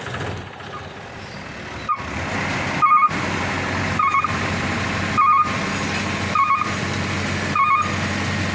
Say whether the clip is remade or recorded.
recorded